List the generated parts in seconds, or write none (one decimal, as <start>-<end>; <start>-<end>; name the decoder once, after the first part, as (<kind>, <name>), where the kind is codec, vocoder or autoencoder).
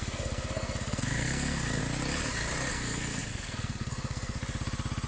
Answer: 0.0-1.8 (codec, SNAC); 2.7-4.4